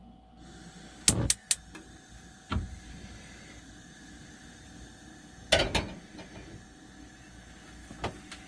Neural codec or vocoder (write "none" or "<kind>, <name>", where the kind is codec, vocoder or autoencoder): none